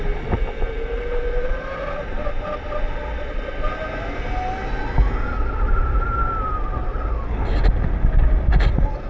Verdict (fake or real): real